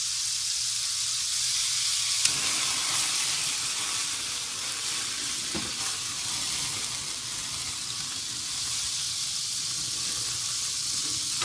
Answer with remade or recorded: recorded